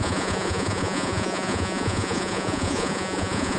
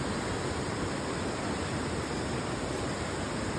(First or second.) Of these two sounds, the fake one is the first